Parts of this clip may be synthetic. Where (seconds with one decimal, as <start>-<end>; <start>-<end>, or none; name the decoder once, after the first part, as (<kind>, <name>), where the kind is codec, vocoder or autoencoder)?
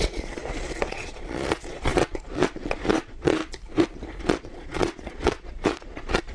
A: 0.0-0.4 (vocoder, Vocos); 0.9-3.4; 4.2-6.3